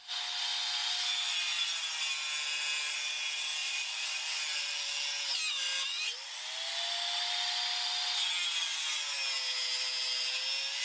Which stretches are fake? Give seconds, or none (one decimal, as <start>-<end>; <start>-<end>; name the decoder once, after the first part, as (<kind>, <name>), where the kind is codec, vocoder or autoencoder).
0.8-1.7 (vocoder, BigVGAN v2); 3.6-4.8; 6.7-8.3